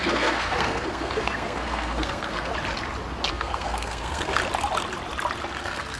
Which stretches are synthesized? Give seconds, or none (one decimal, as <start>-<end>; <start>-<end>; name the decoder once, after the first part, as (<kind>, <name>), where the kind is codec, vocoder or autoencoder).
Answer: 0.0-2.5 (codec, SNAC); 3.3-4.4; 5.6-6.0